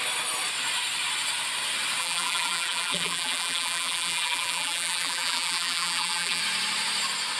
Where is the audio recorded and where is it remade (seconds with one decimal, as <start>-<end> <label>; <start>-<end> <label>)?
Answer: 0.0-2.0 recorded; 2.0-6.4 remade; 6.4-7.4 recorded